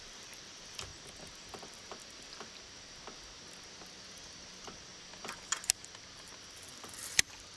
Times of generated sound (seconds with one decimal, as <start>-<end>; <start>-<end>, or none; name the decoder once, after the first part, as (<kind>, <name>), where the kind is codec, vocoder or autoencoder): 0.0-0.9 (vocoder, BigVGAN v2); 3.7-4.9; 7.0-7.6